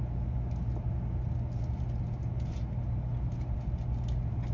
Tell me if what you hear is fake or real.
real